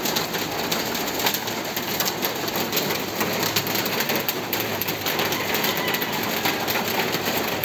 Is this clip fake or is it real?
real